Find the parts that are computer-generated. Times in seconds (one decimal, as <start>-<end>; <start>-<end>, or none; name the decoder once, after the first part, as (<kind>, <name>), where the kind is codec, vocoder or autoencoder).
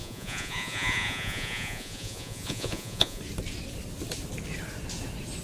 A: 0.0-3.2 (vocoder, Vocos)